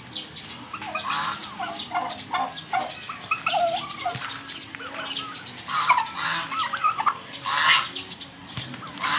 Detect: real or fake real